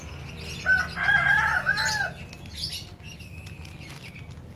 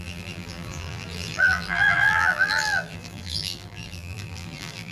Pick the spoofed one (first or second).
second